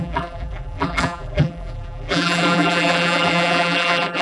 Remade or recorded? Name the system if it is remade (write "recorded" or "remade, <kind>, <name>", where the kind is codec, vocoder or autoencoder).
remade, vocoder, BigVGAN v2